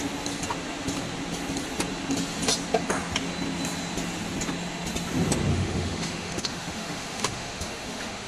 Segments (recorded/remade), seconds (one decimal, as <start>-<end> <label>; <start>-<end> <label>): 0.0-5.5 recorded; 5.5-8.3 remade